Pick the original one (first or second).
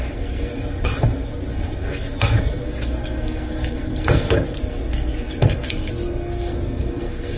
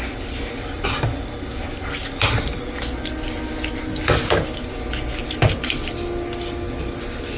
second